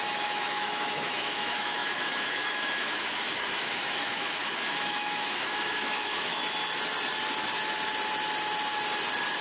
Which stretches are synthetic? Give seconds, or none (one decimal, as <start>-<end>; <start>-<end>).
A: 0.0-6.4